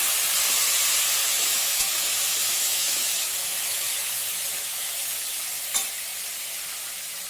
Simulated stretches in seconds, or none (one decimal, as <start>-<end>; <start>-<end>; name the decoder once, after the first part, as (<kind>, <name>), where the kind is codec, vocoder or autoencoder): 1.2-5.5 (autoencoder, DAC-VAE)